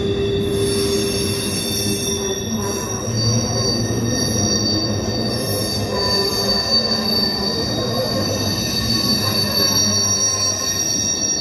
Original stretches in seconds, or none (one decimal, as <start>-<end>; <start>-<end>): 0.0-11.4

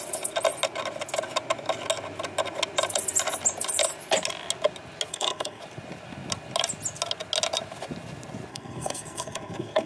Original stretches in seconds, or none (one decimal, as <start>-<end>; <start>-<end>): 0.0-5.1; 5.6-8.5

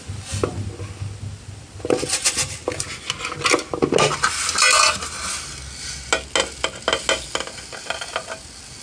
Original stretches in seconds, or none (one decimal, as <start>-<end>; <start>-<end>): 0.0-8.8